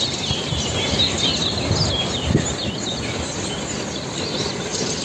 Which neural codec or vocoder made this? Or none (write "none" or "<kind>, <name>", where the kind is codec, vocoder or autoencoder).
none